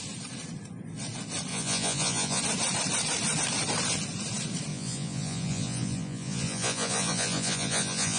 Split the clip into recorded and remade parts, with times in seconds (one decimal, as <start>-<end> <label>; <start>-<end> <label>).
0.0-1.5 recorded; 1.5-2.4 remade; 2.4-4.7 recorded; 4.7-8.2 remade